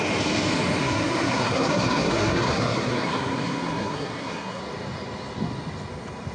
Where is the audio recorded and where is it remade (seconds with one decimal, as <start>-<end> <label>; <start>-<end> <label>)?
0.0-0.8 recorded; 0.8-4.6 remade; 4.6-6.3 recorded